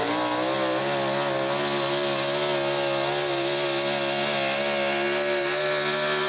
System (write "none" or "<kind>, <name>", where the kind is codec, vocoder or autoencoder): none